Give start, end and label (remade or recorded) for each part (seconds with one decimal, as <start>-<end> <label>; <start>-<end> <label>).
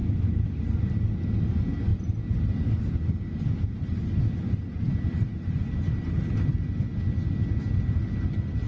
0.0-0.5 remade; 0.5-8.7 recorded